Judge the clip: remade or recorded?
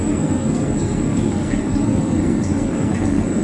remade